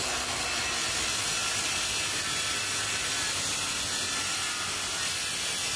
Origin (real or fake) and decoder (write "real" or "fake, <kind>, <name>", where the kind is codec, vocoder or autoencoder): real